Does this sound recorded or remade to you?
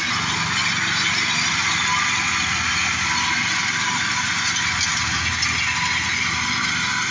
recorded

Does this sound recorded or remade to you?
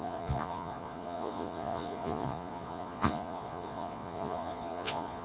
remade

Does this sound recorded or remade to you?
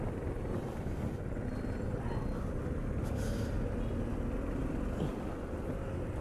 recorded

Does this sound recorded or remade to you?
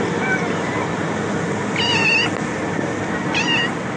recorded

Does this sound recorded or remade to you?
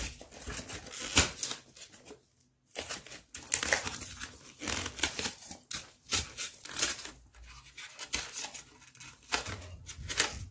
recorded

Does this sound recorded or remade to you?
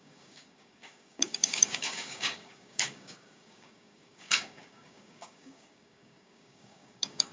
remade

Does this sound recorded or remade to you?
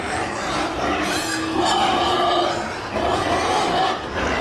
recorded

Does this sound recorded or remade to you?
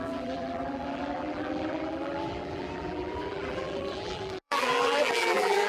remade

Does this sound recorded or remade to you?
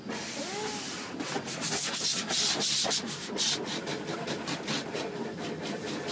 recorded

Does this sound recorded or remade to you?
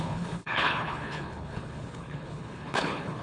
remade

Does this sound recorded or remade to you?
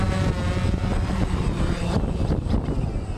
recorded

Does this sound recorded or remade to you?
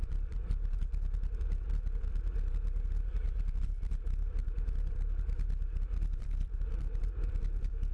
remade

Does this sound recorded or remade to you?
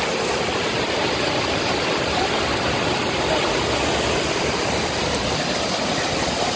recorded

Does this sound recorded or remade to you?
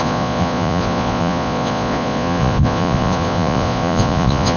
remade